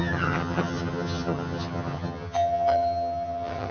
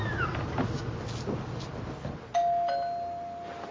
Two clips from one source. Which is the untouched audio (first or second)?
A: second